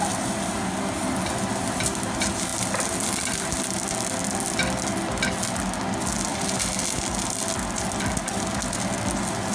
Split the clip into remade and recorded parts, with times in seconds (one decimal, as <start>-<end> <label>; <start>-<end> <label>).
0.0-9.5 recorded